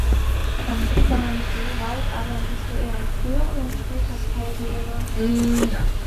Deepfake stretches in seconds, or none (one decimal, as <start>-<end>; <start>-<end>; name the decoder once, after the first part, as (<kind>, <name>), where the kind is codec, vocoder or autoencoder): 0.4-0.9 (vocoder, BigVGAN v2)